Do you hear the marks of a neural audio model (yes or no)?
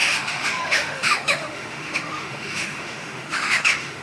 yes